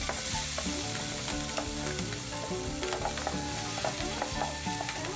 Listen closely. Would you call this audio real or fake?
real